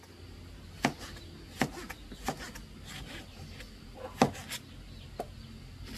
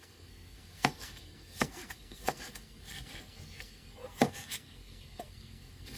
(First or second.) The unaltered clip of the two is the first